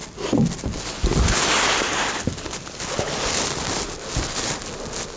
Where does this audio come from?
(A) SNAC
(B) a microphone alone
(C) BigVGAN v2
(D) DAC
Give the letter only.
B